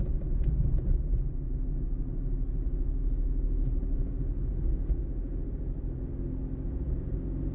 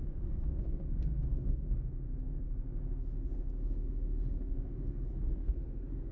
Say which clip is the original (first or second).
first